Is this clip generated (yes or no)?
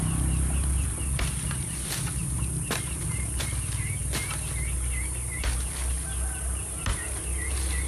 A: no